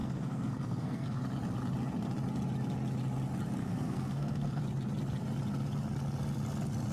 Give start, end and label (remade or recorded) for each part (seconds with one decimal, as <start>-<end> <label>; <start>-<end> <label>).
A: 0.0-1.2 remade; 1.2-3.6 recorded; 3.6-4.6 remade; 4.6-6.9 recorded